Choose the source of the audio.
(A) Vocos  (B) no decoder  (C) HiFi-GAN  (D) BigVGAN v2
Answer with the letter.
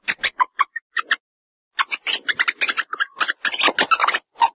B